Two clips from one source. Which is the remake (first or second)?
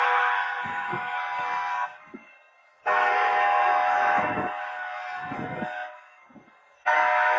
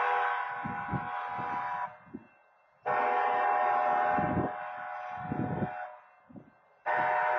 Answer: first